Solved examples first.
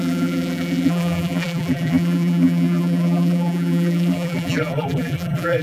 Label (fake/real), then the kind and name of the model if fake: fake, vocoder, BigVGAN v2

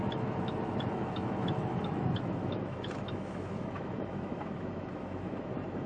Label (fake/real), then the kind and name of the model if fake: fake, autoencoder, DAC-VAE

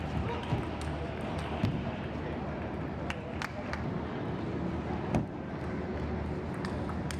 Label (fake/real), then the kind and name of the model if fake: real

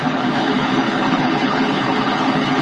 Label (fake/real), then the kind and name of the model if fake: fake, codec, HILCodec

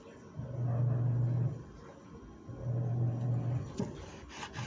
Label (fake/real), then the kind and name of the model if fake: real